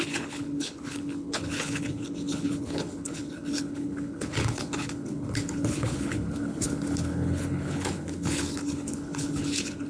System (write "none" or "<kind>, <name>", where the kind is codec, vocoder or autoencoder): codec, HILCodec